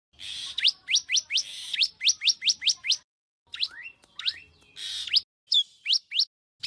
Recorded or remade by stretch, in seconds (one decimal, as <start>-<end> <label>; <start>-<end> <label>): 0.0-6.7 recorded